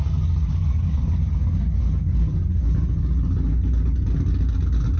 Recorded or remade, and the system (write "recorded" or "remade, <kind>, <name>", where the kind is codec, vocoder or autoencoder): recorded